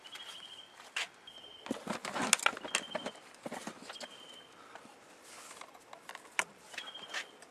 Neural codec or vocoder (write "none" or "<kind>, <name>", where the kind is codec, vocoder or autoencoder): none